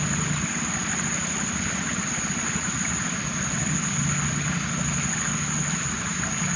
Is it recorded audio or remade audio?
recorded